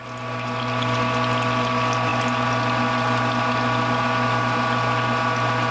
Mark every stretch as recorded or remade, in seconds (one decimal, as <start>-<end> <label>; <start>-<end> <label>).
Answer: 0.0-5.7 recorded